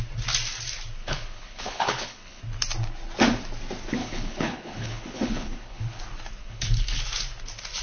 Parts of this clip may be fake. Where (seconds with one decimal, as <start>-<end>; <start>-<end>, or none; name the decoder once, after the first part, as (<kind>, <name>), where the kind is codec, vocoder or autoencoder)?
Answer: 1.0-2.4 (codec, HILCodec); 4.0-6.0; 6.4-7.0